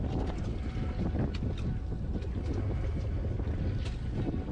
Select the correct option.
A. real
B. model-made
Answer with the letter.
A